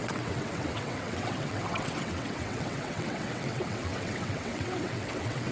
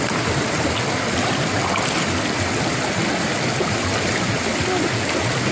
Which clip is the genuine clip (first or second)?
second